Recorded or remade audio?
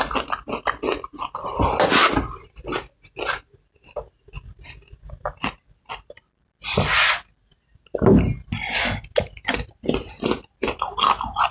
recorded